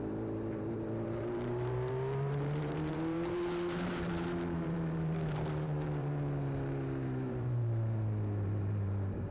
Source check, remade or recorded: remade